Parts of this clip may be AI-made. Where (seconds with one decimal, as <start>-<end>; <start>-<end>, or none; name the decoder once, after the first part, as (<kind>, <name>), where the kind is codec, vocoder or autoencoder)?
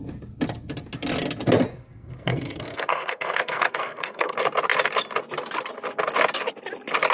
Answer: 1.7-4.3 (codec, SNAC)